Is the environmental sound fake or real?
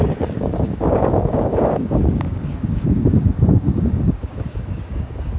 fake